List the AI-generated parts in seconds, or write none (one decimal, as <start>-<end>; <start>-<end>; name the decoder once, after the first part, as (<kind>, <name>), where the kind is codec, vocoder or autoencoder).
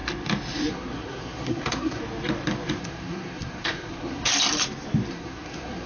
0.7-2.0 (codec, SNAC); 2.8-4.3; 5.1-5.9